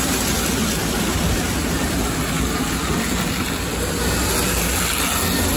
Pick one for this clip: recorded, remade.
recorded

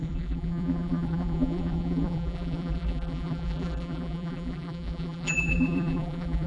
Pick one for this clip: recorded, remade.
remade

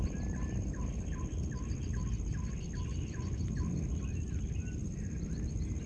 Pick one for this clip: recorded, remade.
recorded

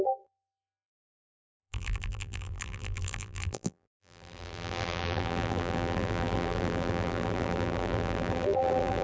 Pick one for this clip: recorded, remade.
remade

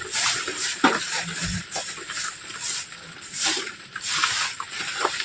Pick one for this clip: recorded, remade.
remade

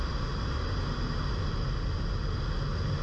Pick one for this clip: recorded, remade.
recorded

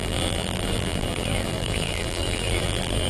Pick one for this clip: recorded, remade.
remade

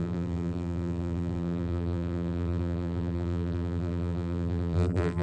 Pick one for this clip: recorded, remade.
remade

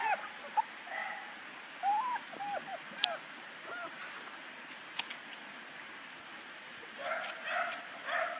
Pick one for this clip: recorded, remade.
recorded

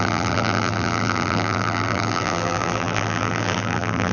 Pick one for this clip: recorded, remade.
remade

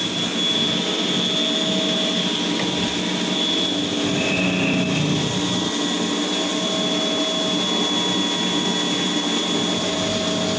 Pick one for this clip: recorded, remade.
recorded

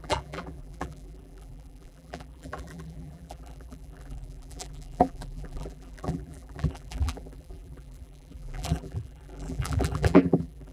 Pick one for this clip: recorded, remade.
remade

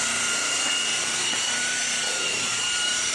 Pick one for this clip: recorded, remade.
remade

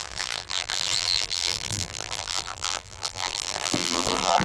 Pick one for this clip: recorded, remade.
remade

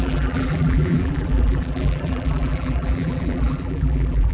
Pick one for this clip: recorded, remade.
remade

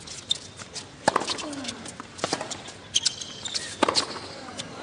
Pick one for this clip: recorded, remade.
remade